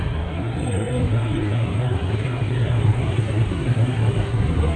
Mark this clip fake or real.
fake